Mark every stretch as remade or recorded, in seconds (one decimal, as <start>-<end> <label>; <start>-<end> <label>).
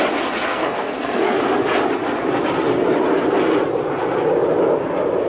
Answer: 0.0-0.5 recorded; 0.5-1.4 remade; 1.4-5.3 recorded